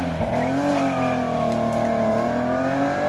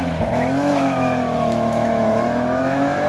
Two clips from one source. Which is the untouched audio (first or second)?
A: first